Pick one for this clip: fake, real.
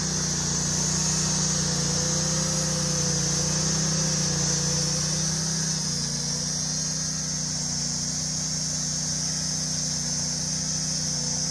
real